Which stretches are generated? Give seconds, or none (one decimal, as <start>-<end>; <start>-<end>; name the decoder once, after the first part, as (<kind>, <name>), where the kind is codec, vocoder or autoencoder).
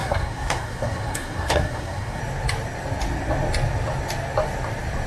0.0-2.2 (codec, SNAC)